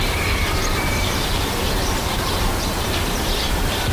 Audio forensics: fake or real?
fake